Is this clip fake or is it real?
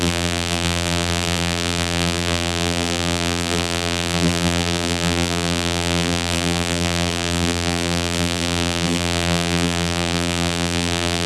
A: fake